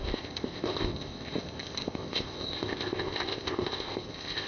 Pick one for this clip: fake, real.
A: fake